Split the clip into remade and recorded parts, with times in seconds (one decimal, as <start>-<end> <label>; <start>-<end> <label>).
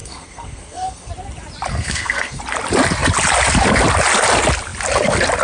0.0-1.1 remade; 1.1-1.7 recorded; 1.7-2.4 remade; 2.4-5.4 recorded